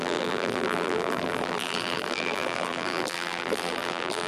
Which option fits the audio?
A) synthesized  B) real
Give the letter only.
A